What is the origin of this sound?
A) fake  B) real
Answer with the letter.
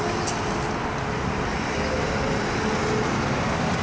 B